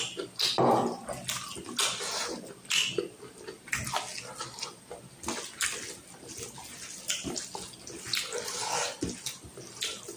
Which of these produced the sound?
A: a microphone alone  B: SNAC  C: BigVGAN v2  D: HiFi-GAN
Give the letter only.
A